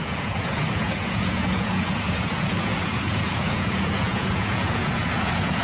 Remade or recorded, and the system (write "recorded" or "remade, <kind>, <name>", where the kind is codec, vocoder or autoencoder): remade, vocoder, Vocos